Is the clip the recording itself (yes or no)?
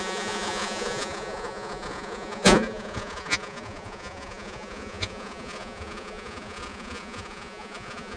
no